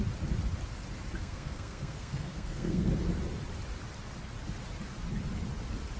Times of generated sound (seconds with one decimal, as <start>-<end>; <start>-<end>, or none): 1.2-2.9